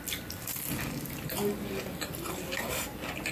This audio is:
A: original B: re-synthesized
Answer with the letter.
A